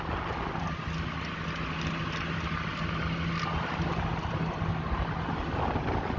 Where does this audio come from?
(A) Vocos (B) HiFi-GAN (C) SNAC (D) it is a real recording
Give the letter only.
D